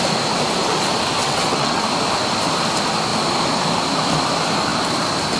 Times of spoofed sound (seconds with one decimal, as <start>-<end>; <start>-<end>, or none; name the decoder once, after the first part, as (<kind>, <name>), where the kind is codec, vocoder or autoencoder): 1.2-1.8 (vocoder, WaveNeXt)